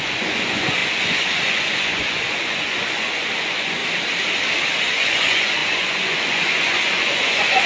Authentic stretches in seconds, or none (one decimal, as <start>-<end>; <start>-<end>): 3.8-4.8